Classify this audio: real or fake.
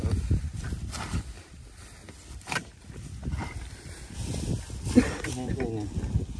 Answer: real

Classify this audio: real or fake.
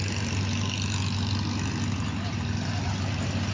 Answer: real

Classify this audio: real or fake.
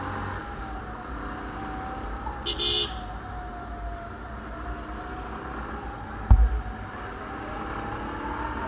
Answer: real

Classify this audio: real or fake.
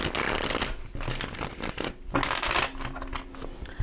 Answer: real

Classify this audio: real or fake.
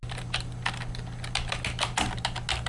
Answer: real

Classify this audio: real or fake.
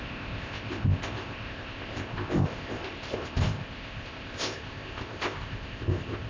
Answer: fake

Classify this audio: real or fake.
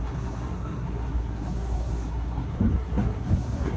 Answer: fake